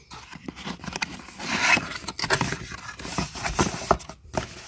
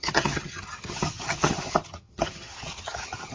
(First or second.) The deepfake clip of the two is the second